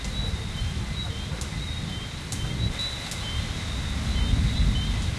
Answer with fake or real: real